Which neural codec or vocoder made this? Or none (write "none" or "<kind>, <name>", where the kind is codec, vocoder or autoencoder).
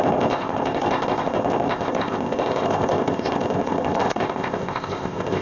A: codec, ZipCodec